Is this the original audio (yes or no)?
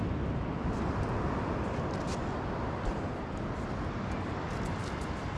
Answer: yes